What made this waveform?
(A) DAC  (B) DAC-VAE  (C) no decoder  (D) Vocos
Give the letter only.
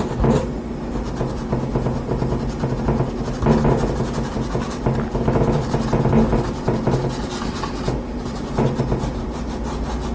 C